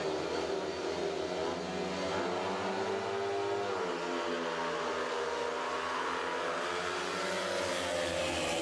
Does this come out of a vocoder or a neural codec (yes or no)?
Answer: no